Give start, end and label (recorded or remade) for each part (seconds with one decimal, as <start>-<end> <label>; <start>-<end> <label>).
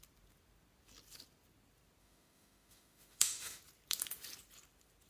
0.0-2.0 recorded; 2.0-3.6 remade; 3.6-5.1 recorded